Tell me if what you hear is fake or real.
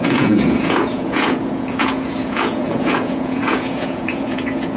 fake